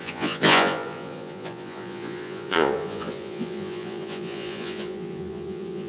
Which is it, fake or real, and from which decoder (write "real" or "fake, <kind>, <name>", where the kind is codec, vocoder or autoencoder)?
fake, vocoder, Vocos